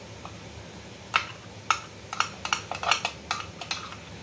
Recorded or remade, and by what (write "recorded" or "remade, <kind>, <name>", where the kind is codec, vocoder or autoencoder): recorded